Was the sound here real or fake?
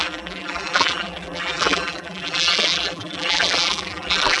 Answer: fake